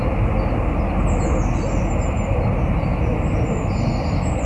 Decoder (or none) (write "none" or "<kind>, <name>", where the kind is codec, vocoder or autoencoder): none